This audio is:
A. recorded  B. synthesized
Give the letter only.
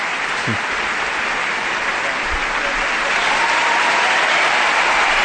A